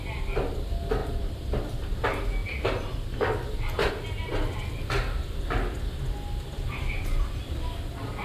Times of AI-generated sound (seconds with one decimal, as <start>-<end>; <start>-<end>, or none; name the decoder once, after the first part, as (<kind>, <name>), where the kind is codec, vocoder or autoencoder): 1.0-2.0 (vocoder, BigVGAN v2)